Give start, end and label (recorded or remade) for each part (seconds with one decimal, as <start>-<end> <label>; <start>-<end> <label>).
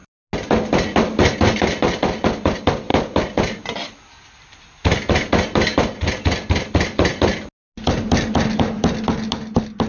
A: 0.0-9.9 recorded